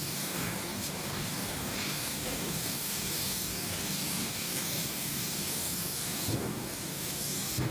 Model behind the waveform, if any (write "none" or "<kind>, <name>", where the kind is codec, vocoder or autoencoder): codec, DAC